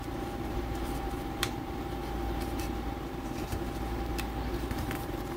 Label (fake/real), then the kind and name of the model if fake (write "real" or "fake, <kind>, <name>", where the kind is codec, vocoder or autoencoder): fake, vocoder, BigVGAN v2